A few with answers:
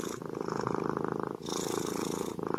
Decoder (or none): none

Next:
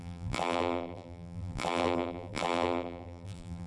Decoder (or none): vocoder, BigVGAN v2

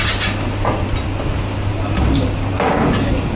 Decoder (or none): none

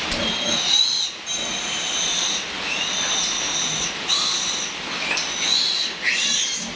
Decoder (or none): none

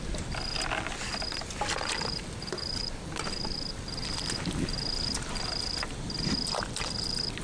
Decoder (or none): vocoder, BigVGAN v2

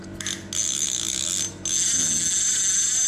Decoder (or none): none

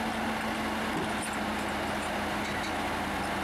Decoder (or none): none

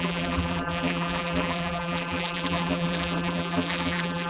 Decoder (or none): vocoder, BigVGAN v2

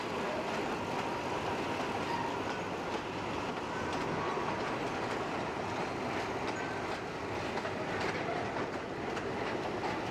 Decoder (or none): none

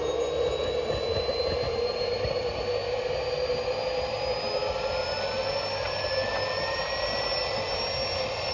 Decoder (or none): none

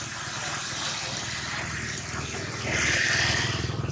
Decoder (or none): none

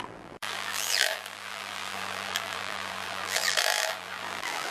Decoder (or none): vocoder, BigVGAN v2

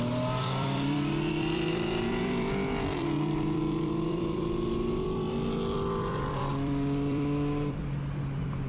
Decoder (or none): vocoder, BigVGAN v2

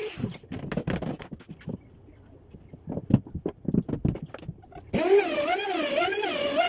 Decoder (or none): none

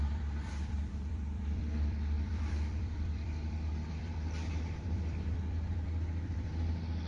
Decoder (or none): vocoder, BigVGAN v2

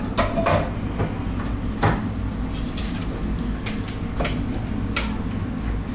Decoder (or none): none